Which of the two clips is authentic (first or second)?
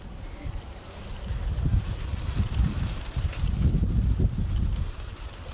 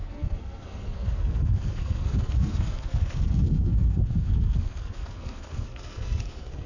first